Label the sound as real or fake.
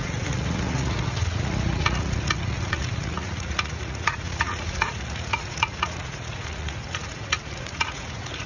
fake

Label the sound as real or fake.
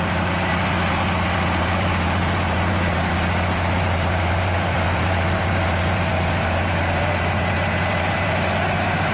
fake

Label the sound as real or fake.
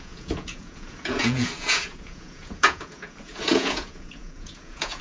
fake